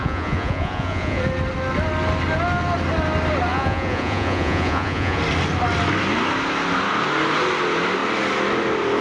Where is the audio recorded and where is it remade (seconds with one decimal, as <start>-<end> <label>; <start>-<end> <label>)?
0.0-1.2 remade; 1.2-3.5 recorded; 3.5-5.2 remade; 5.2-9.0 recorded